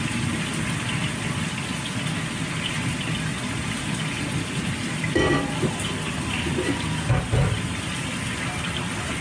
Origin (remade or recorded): recorded